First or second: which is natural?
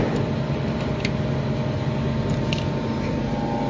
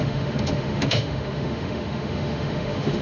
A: first